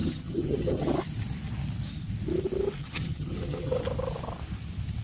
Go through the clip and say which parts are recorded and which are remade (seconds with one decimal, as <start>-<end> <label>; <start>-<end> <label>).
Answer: 0.0-0.9 remade; 0.9-2.8 recorded; 2.8-3.8 remade; 3.8-5.0 recorded